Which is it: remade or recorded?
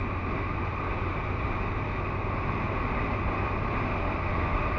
recorded